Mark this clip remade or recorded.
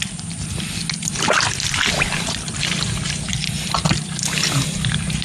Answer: recorded